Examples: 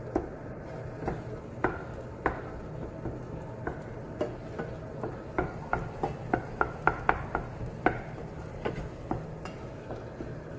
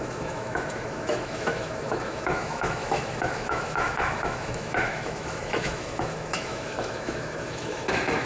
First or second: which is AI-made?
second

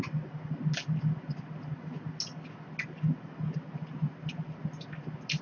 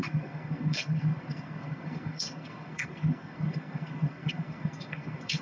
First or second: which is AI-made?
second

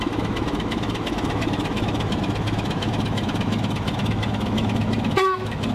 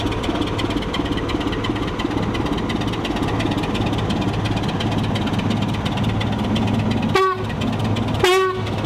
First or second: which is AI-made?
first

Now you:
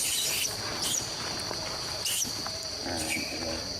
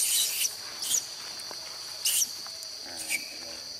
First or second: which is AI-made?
first